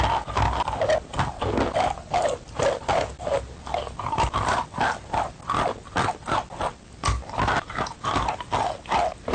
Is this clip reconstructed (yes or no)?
no